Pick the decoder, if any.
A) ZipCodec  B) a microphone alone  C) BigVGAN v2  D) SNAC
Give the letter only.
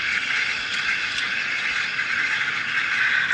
B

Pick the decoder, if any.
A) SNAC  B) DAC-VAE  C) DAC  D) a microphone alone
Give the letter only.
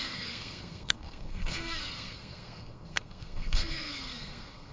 A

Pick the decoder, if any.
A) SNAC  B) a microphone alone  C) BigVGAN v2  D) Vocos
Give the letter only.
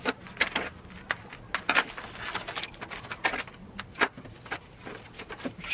B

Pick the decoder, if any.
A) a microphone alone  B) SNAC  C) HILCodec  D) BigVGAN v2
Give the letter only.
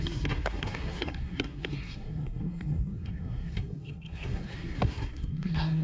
B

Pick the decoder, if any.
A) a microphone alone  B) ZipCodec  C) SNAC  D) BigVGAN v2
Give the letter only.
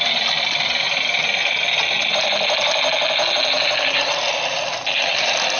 A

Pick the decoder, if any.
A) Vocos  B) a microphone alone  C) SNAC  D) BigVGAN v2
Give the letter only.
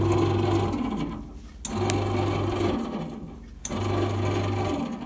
B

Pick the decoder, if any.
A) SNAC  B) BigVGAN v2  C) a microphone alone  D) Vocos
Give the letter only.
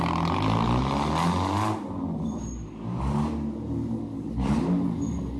C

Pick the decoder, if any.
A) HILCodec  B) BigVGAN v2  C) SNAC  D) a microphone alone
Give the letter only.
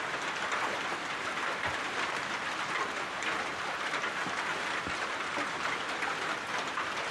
D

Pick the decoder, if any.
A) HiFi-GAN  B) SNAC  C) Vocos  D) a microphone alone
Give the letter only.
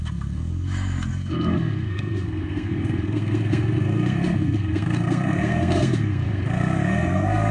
B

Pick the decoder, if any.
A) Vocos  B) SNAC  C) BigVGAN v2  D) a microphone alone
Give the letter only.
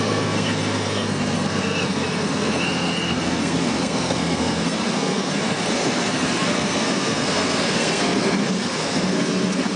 B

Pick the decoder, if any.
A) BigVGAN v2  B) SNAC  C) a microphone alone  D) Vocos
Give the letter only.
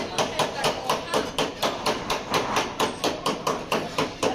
C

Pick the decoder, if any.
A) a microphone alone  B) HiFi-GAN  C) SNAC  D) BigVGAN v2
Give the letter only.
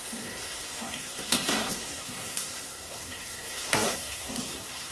C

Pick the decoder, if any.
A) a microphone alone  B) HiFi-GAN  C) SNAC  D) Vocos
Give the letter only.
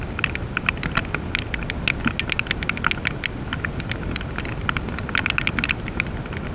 A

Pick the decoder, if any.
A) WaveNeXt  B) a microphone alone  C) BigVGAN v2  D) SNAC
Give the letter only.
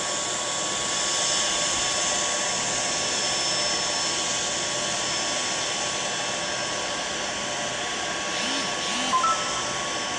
B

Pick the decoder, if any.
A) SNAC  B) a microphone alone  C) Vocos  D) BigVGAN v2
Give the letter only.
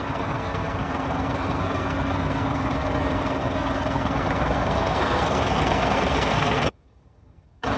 A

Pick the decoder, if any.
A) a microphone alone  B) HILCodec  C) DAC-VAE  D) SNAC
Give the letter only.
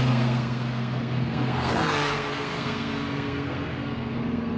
D